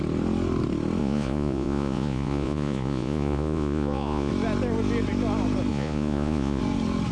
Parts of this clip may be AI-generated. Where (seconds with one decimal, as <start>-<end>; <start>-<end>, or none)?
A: 1.0-4.3; 5.7-6.6

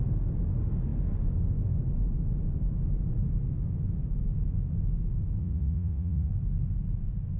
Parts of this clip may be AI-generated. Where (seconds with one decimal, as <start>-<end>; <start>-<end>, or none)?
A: 5.4-6.3

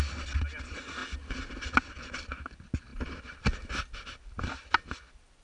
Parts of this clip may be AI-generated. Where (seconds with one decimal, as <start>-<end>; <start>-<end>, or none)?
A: none

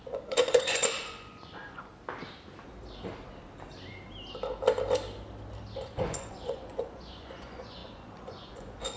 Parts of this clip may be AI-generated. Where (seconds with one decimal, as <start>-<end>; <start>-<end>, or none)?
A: 0.0-1.9; 5.8-9.0

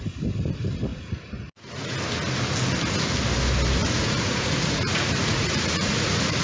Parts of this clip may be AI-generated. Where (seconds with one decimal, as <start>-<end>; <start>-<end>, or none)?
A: 0.9-1.9; 3.8-6.4

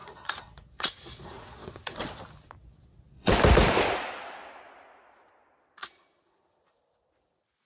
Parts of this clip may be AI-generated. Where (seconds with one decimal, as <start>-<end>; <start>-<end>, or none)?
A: 0.0-2.1; 2.6-3.3; 5.8-6.7

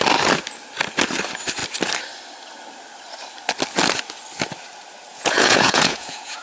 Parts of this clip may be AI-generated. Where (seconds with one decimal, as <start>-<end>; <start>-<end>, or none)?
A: 5.1-6.4

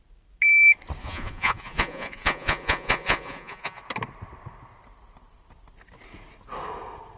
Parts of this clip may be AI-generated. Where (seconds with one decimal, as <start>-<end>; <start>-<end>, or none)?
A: 1.0-3.8